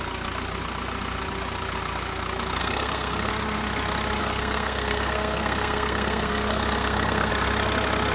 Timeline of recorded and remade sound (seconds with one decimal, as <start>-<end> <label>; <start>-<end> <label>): 0.0-2.6 recorded; 2.6-3.3 remade; 3.3-4.2 recorded; 4.2-7.3 remade; 7.3-8.1 recorded